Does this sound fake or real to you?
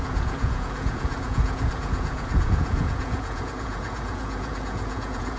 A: fake